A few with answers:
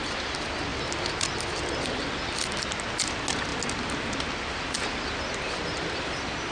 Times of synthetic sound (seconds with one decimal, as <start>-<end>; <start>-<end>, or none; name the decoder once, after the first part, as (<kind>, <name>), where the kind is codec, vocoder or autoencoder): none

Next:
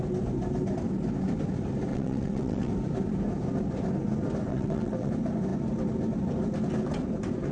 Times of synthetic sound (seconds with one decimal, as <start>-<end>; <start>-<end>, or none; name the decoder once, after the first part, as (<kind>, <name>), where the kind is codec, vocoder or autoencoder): 1.9-2.7 (vocoder, WaveNeXt); 4.5-5.1

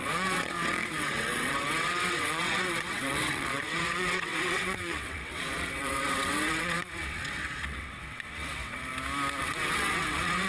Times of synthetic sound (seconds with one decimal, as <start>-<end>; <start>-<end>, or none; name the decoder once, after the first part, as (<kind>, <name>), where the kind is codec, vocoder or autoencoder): 0.0-8.9 (vocoder, WaveNeXt); 9.4-10.5

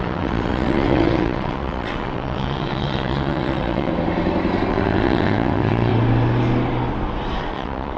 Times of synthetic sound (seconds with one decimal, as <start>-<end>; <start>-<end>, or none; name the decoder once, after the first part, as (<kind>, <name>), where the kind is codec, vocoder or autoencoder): 0.0-3.9 (vocoder, WaveNeXt); 4.7-5.9; 7.4-8.0

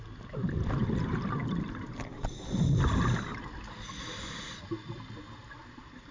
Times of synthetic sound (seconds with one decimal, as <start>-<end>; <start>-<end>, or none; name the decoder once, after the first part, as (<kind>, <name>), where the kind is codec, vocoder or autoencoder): none

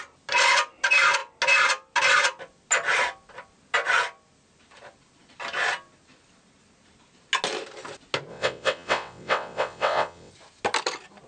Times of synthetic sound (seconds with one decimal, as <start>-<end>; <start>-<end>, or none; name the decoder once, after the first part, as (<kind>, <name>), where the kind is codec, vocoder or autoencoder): 8.3-10.3 (vocoder, WaveNeXt)